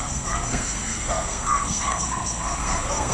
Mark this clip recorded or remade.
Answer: remade